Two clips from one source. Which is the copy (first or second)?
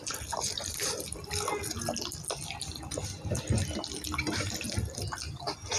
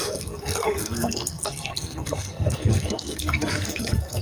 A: second